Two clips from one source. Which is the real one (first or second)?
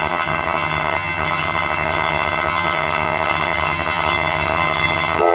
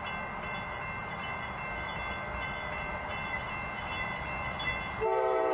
second